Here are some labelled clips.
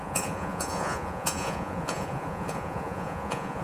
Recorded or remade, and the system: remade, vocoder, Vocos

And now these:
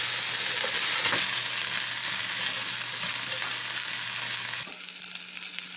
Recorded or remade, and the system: recorded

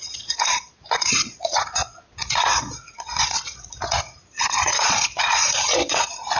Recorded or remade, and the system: remade, vocoder, Vocos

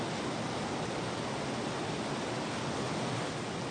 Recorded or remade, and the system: recorded